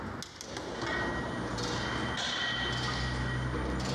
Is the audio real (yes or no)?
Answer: yes